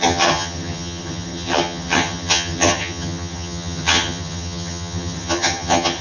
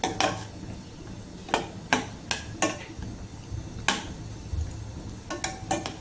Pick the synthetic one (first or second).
first